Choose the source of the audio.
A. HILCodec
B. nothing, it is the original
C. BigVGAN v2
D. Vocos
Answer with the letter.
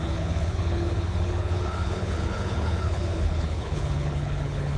A